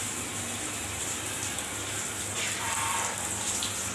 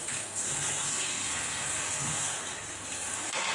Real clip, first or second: first